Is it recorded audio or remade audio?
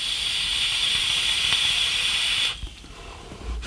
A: recorded